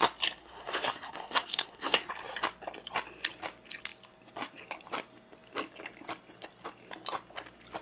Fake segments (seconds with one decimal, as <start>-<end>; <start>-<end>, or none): 0.4-2.1